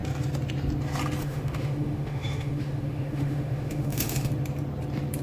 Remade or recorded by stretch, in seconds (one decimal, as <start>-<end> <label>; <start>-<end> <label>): 0.0-1.2 recorded; 1.2-4.3 remade; 4.3-5.2 recorded